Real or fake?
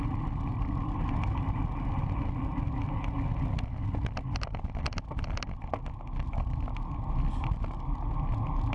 real